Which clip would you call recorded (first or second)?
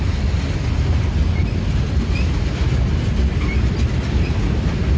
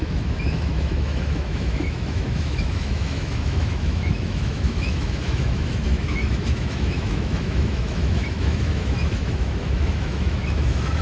first